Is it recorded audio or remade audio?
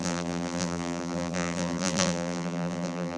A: remade